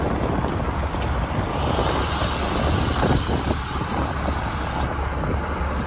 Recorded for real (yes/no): no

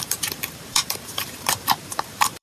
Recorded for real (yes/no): no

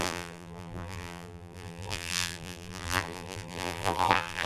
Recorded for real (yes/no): no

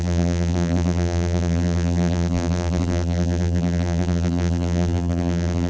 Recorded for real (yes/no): no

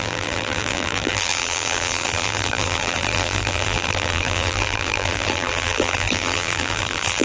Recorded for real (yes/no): no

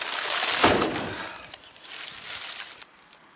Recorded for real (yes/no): yes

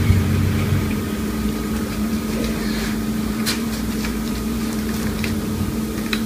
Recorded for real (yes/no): no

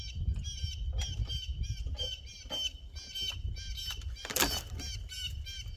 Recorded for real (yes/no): yes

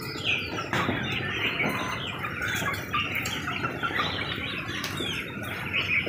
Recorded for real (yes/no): no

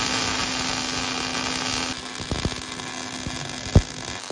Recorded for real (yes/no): yes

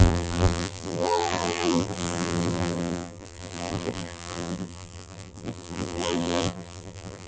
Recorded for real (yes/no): no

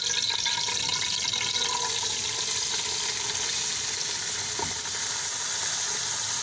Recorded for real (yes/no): yes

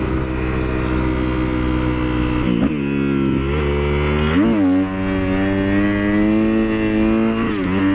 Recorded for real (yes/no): yes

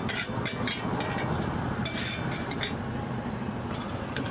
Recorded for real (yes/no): yes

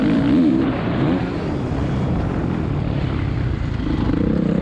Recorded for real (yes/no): no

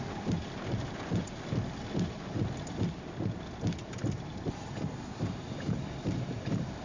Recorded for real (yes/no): no